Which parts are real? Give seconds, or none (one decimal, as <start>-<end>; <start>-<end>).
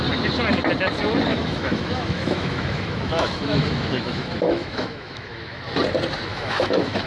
0.0-1.3; 5.6-6.3